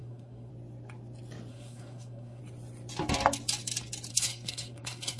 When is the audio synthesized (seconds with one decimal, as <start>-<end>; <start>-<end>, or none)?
0.0-0.5; 1.5-2.4; 4.1-5.2